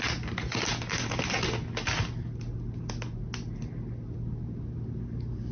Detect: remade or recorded recorded